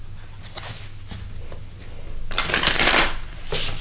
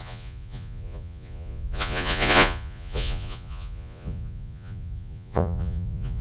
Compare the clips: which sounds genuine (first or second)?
first